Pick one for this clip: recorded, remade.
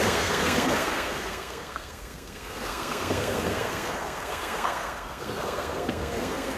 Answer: remade